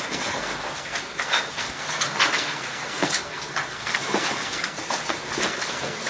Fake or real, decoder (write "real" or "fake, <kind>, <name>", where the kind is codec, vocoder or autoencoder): fake, codec, SNAC